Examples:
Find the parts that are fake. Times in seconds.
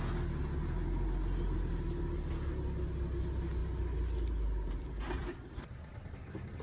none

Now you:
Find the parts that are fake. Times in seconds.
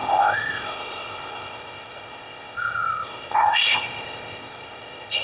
0.0-5.2 (codec, ZipCodec)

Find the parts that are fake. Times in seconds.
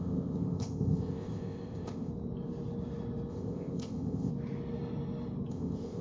0.0-2.1 (codec, ZipCodec); 3.3-4.3; 5.5-6.0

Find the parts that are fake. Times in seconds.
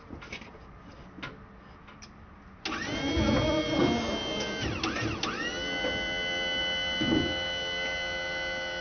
none